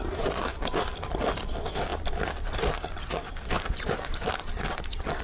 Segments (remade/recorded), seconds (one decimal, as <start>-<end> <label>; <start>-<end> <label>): 0.0-1.9 recorded; 1.9-2.6 remade; 2.6-5.2 recorded